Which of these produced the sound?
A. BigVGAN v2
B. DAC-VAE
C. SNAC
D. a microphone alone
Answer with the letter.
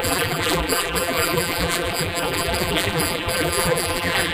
A